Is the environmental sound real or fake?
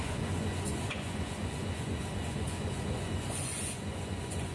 fake